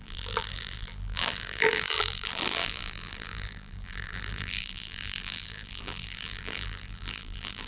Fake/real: fake